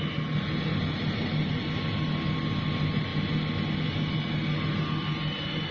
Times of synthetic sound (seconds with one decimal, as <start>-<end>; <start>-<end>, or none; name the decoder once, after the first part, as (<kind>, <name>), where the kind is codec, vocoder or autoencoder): none

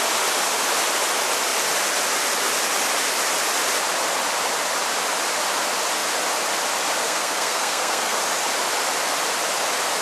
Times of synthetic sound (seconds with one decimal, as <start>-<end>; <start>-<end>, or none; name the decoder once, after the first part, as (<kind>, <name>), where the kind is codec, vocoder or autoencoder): 7.0-8.2 (codec, SNAC)

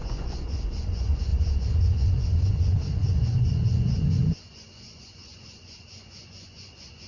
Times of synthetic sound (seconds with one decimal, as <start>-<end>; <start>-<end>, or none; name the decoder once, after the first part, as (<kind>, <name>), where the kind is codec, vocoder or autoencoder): 0.0-7.1 (vocoder, Vocos)

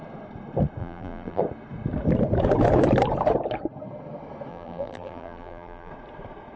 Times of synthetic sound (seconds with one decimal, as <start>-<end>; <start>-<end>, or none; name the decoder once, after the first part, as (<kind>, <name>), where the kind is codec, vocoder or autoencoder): 0.8-1.4 (vocoder, BigVGAN v2); 4.5-5.9